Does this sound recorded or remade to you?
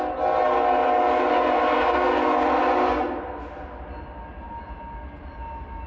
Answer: recorded